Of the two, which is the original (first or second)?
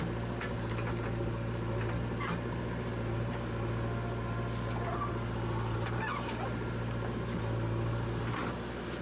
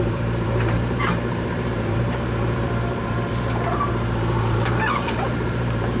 first